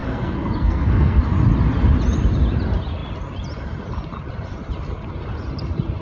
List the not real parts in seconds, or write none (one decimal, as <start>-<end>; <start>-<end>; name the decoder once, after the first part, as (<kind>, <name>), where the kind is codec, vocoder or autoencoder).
0.0-1.2 (codec, SNAC)